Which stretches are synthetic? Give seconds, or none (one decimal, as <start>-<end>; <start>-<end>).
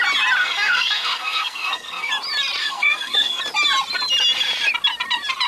0.4-2.1; 2.6-3.4